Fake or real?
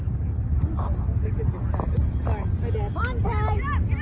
real